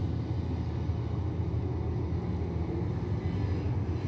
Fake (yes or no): no